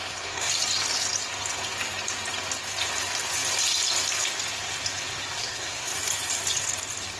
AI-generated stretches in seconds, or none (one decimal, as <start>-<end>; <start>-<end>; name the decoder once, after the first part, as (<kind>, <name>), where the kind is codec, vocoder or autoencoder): 0.0-0.5 (codec, SNAC); 5.4-5.9